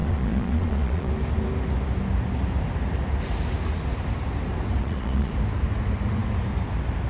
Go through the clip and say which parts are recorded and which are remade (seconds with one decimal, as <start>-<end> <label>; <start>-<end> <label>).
0.0-1.1 remade; 1.1-4.8 recorded; 4.8-5.3 remade; 5.3-7.1 recorded